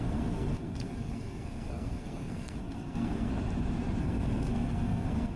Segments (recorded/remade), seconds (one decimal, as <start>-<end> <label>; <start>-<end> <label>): 0.0-3.3 remade; 3.3-4.0 recorded; 4.0-5.4 remade